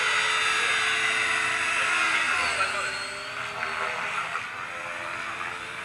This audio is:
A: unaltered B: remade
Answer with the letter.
A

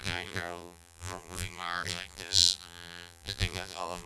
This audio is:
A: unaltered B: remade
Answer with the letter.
B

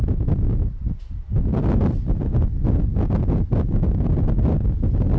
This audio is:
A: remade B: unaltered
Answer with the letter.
B